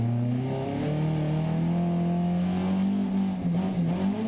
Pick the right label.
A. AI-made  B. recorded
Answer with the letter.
B